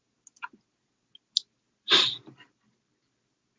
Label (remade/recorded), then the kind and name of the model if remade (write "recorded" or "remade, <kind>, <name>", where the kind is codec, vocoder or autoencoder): recorded